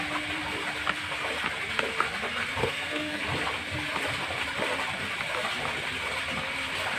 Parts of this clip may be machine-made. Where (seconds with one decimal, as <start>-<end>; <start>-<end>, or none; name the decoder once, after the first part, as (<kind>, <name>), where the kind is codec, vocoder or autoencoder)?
2.6-3.2 (codec, SNAC)